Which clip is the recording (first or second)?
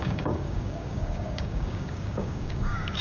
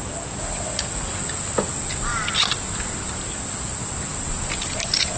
second